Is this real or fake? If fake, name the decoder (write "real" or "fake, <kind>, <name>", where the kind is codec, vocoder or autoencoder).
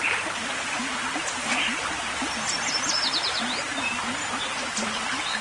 real